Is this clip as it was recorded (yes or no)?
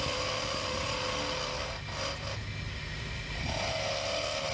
yes